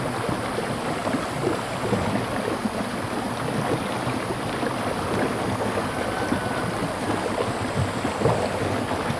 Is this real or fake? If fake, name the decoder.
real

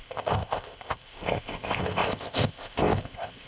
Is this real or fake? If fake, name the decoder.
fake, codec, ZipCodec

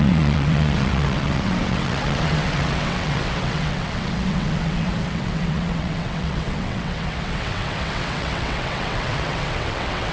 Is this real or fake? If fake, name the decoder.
fake, vocoder, WaveNeXt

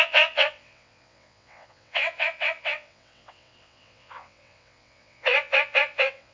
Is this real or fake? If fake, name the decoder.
fake, vocoder, WaveNeXt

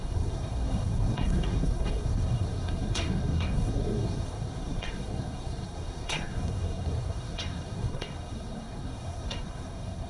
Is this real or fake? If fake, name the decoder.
fake, codec, SNAC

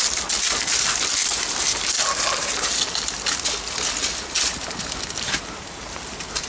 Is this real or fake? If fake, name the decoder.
real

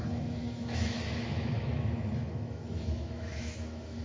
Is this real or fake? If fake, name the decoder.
fake, autoencoder, DAC-VAE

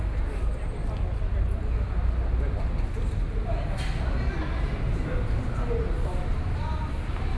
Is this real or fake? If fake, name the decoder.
real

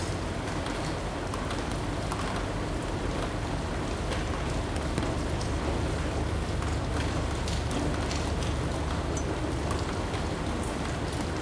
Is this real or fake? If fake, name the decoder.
real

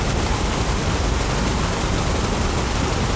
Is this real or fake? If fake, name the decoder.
real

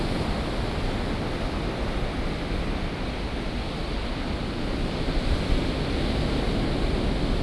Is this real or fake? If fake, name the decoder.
real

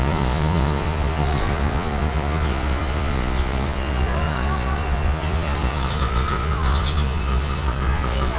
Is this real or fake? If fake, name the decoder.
fake, vocoder, Vocos